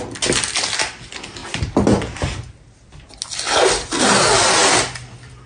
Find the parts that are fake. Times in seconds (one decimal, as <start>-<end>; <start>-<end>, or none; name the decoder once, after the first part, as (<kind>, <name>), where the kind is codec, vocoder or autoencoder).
none